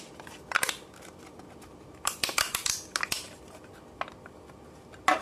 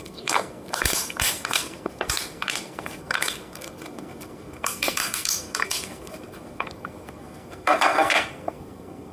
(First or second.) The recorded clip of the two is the first